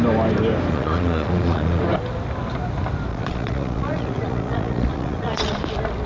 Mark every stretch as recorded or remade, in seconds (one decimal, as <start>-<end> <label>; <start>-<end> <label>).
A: 0.0-0.7 recorded; 0.7-1.8 remade; 1.8-3.1 recorded; 3.1-5.6 remade; 5.6-6.1 recorded